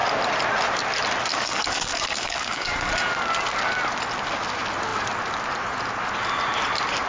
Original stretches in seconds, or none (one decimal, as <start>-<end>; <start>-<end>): 0.0-1.3; 2.9-7.1